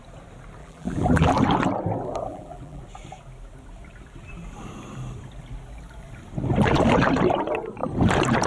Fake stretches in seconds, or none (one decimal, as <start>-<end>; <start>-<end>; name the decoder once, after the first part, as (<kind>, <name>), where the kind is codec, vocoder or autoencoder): 0.6-1.3 (vocoder, BigVGAN v2); 2.3-2.8